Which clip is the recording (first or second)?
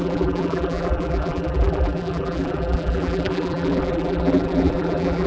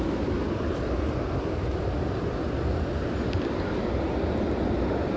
second